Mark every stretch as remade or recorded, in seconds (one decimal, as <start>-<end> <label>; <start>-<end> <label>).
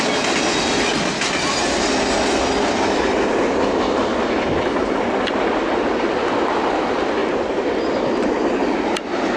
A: 0.0-9.4 recorded